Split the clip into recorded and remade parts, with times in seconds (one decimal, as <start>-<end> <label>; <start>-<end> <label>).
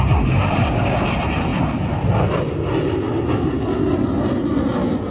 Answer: 0.0-5.1 recorded